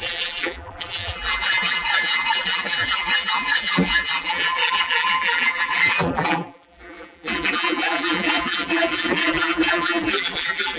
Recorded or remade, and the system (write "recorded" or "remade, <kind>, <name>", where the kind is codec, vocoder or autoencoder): remade, vocoder, BigVGAN v2